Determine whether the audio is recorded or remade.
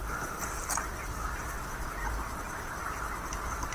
remade